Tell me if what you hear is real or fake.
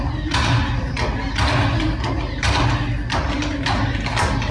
real